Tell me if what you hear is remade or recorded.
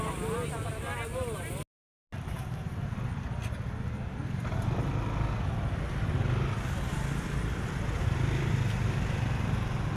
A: recorded